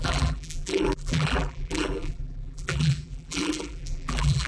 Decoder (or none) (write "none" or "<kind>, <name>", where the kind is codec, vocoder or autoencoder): vocoder, BigVGAN v2